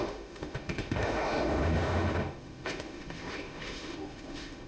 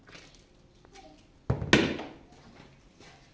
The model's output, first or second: first